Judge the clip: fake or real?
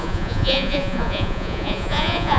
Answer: fake